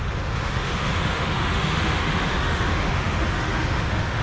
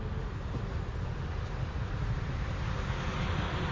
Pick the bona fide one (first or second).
second